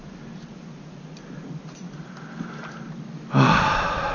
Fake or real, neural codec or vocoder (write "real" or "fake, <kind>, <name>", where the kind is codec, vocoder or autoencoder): real